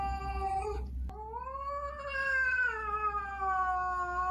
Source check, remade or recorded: recorded